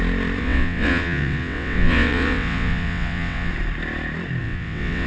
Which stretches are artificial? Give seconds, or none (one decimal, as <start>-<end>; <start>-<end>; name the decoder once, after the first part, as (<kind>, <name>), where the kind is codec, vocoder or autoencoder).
0.4-3.5 (vocoder, WaveNeXt); 4.4-5.1